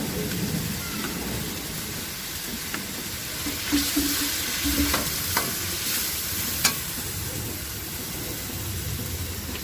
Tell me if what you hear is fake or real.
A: real